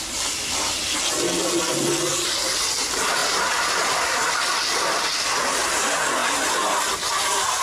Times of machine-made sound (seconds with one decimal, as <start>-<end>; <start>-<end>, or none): 2.1-2.7; 3.2-4.3